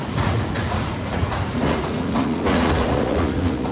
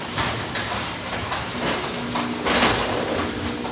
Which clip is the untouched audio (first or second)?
second